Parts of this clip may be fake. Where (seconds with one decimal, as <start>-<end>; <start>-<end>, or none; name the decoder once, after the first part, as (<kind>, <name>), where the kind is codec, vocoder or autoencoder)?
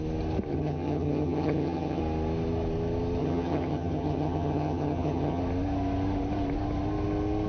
0.5-2.0 (vocoder, HiFi-GAN); 3.2-5.4